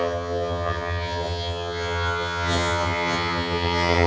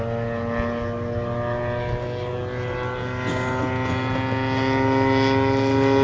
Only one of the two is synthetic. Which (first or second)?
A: first